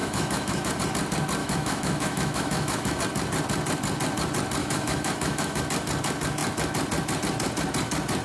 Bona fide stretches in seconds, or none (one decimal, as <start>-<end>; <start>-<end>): 0.8-1.4; 3.0-4.6; 5.6-8.2